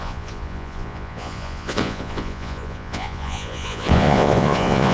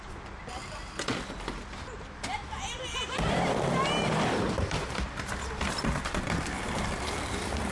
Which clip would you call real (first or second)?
second